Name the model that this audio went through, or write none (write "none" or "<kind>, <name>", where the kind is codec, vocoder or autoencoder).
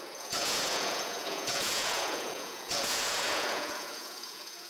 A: vocoder, Vocos